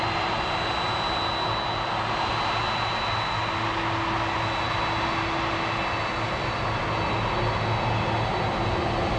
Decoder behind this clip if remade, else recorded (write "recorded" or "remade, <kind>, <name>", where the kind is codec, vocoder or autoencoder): recorded